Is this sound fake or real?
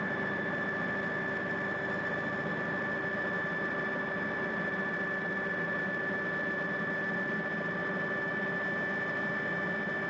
real